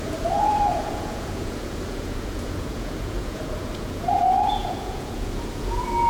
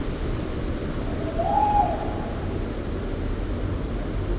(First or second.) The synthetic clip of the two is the first